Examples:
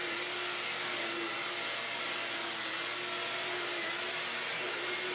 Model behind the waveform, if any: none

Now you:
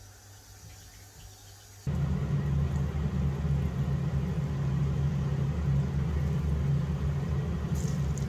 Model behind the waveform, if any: none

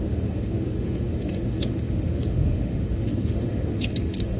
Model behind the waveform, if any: autoencoder, DAC-VAE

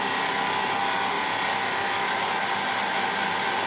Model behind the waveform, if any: none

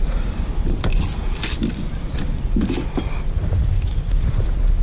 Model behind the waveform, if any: none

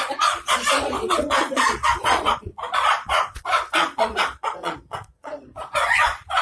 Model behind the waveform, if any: vocoder, Vocos